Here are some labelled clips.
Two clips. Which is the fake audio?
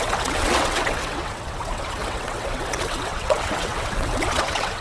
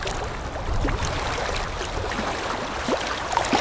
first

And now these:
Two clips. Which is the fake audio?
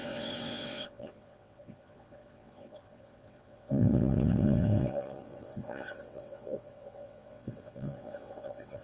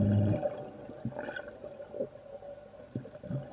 first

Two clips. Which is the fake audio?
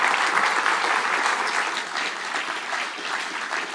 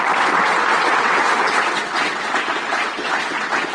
second